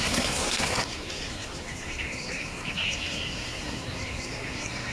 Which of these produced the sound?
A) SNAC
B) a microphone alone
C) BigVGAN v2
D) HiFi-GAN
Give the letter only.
A